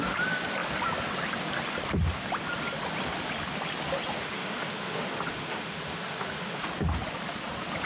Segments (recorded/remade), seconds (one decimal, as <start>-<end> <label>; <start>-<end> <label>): 0.0-4.2 recorded; 4.2-6.6 remade; 6.6-7.9 recorded